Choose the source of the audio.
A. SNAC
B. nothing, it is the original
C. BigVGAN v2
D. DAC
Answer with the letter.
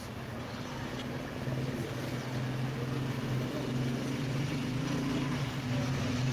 B